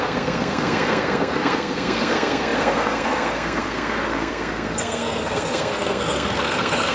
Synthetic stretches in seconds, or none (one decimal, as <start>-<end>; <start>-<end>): 0.0-6.9